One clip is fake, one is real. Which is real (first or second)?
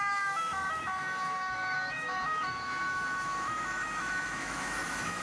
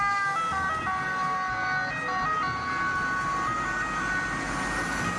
second